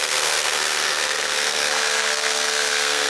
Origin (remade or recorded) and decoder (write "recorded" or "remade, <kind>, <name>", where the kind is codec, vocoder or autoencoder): remade, codec, SNAC